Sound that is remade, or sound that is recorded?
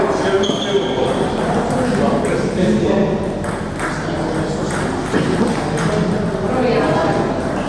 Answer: recorded